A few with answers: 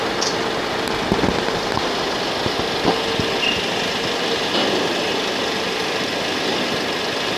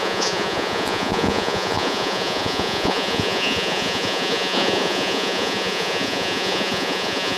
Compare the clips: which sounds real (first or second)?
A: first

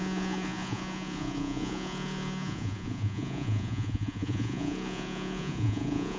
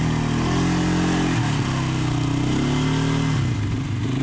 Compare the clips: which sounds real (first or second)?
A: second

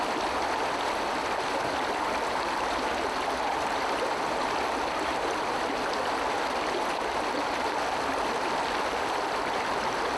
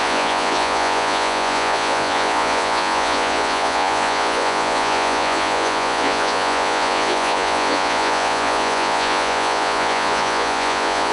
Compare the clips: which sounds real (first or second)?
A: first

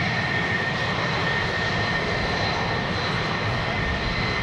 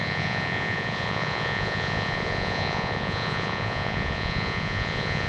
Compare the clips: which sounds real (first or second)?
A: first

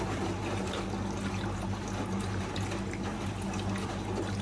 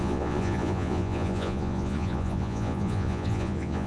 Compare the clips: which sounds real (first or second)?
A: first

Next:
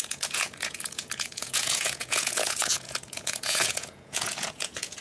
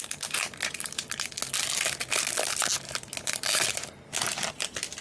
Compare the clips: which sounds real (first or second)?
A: second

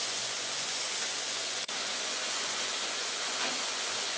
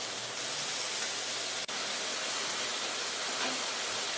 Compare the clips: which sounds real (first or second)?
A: second